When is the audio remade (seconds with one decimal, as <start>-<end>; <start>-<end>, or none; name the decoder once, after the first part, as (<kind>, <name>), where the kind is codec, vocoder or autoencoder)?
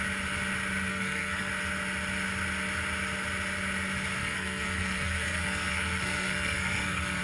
0.9-1.5 (codec, SNAC); 4.2-7.2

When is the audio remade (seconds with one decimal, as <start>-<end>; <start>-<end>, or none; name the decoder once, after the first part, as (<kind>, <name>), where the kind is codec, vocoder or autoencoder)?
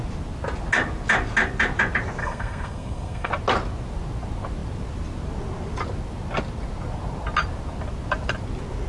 2.2-3.3 (codec, SNAC)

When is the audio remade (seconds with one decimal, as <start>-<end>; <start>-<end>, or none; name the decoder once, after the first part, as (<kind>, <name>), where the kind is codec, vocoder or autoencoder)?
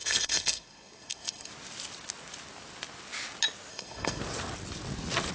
0.0-1.5 (codec, SNAC); 3.7-4.2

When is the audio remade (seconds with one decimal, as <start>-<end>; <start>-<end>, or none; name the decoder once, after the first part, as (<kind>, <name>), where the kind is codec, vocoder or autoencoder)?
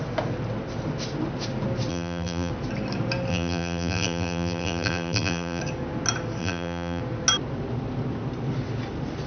1.9-2.5 (vocoder, BigVGAN v2); 3.3-5.6; 6.4-7.0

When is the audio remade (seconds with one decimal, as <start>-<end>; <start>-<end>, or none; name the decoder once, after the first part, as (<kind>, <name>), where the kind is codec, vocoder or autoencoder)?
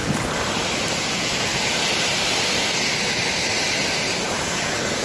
1.1-1.5 (vocoder, Vocos); 4.5-5.0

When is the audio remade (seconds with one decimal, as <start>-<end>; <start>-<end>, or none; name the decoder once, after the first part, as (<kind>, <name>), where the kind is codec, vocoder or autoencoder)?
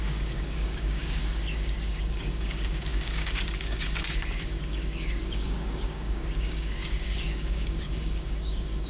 0.0-8.9 (codec, DAC)